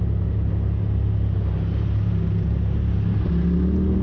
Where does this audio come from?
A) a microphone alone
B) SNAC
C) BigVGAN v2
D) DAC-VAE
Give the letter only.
A